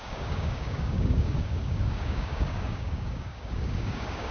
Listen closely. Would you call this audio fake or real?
fake